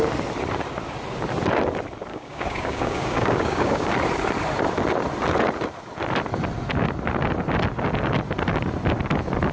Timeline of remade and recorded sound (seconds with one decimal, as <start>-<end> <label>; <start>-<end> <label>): 0.0-2.1 recorded; 2.1-3.9 remade; 3.9-9.5 recorded